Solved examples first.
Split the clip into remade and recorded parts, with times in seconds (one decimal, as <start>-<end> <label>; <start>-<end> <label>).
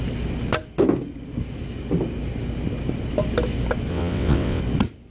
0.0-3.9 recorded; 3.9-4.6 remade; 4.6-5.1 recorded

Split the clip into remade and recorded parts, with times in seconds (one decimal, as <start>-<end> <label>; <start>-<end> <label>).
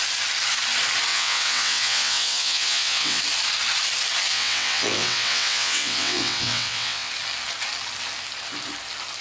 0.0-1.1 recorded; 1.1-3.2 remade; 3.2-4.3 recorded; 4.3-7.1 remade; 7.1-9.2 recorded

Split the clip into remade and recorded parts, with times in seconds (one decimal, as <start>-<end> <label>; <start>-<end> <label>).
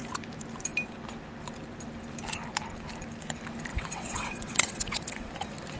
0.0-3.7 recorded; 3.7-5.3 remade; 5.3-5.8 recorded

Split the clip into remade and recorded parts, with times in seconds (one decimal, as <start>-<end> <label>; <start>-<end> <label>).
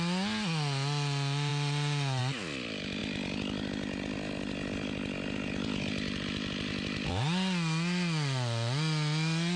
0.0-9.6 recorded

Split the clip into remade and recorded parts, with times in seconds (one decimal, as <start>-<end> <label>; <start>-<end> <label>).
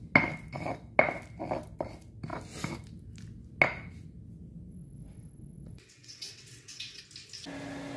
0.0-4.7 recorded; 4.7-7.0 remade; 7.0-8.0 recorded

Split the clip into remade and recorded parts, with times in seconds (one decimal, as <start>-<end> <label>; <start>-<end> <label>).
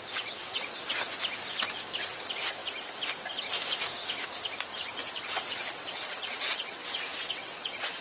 0.0-0.4 recorded; 0.4-0.9 remade; 0.9-5.0 recorded; 5.0-8.0 remade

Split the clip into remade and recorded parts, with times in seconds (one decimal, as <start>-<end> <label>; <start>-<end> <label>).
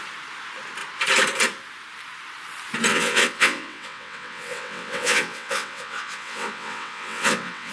0.0-2.9 recorded; 2.9-7.7 remade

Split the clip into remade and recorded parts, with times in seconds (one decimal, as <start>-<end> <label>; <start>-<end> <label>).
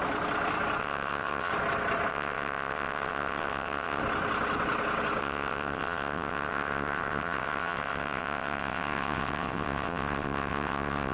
0.0-0.8 recorded; 0.8-1.5 remade; 1.5-2.1 recorded; 2.1-4.0 remade; 4.0-5.2 recorded; 5.2-11.1 remade